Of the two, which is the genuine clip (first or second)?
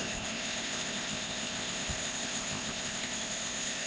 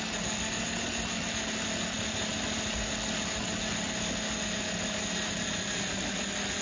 second